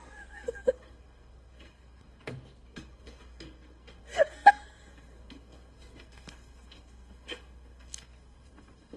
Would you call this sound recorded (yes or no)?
no